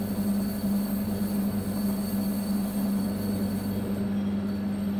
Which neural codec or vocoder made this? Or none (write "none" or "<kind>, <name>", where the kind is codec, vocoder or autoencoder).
none